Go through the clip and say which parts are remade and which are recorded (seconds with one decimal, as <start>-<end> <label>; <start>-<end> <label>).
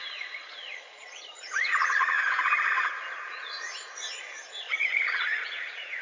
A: 0.0-3.6 remade; 3.6-4.2 recorded; 4.2-6.0 remade